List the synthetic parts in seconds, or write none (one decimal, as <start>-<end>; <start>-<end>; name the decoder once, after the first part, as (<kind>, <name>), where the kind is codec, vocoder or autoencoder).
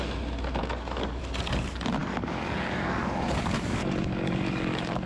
0.6-1.2 (codec, DAC); 2.0-5.1